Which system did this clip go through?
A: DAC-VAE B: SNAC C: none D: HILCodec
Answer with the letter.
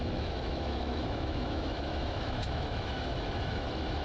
A